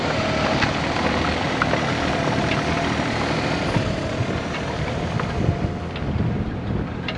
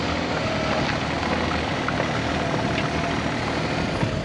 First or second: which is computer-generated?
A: first